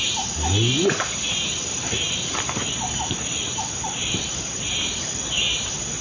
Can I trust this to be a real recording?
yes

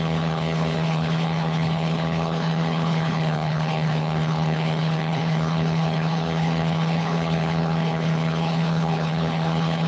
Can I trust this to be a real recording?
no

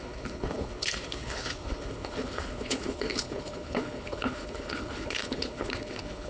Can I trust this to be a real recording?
no